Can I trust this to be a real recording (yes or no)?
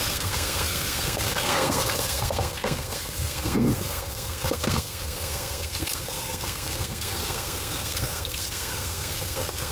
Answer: no